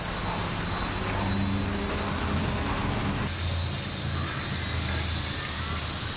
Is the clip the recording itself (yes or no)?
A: yes